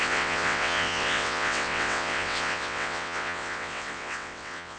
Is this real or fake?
fake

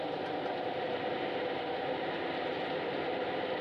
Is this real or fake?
real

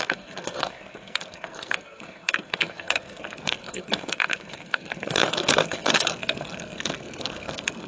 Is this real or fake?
fake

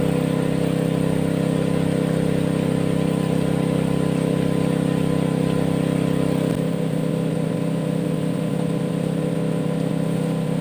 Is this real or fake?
real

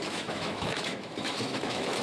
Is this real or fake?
fake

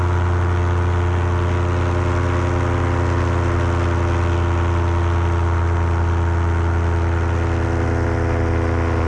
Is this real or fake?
real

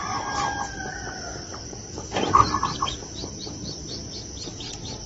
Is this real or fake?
real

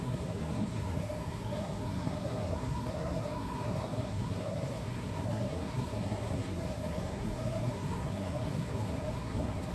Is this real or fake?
fake